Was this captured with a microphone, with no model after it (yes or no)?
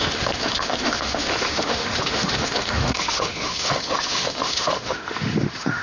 no